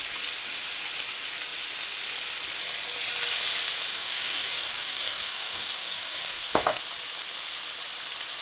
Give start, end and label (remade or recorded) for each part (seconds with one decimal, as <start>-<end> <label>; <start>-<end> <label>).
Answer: 0.0-3.9 recorded; 3.9-6.8 remade; 6.8-8.4 recorded